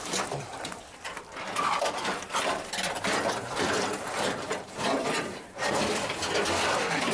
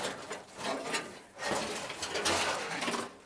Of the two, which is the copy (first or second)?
first